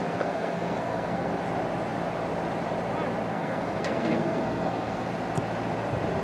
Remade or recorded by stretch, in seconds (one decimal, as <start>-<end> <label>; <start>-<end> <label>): 0.0-1.3 remade; 1.3-3.3 recorded; 3.3-5.1 remade; 5.1-6.2 recorded